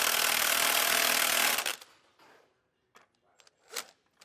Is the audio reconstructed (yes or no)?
no